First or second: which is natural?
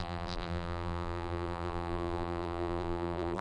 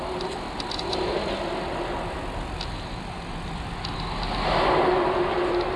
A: second